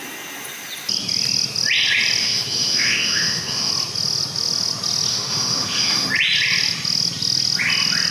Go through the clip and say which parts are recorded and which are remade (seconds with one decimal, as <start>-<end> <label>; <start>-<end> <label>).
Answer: 0.0-2.2 recorded; 2.2-3.7 remade; 3.7-5.1 recorded; 5.1-6.1 remade; 6.1-8.1 recorded